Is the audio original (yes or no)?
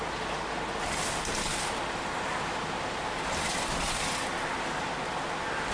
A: yes